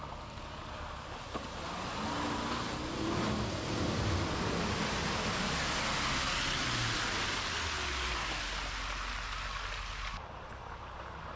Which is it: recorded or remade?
recorded